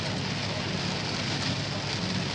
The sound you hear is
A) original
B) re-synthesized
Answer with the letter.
A